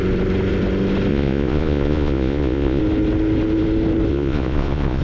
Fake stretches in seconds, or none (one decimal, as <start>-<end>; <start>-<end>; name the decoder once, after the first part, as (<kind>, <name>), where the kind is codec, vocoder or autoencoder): 1.1-2.8 (vocoder, Vocos); 4.1-5.0